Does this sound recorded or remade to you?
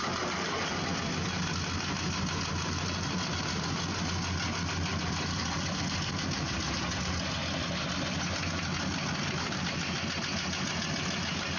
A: recorded